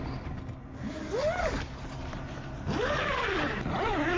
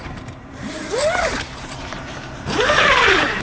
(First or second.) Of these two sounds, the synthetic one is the second